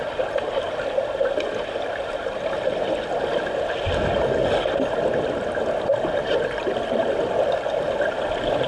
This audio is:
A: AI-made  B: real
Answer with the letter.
B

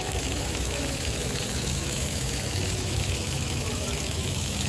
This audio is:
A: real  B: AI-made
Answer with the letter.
B